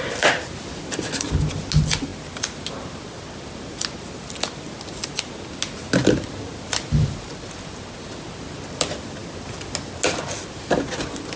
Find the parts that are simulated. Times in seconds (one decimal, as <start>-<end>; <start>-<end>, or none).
none

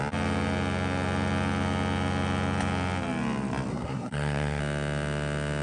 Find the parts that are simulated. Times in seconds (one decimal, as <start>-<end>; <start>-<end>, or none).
3.7-4.6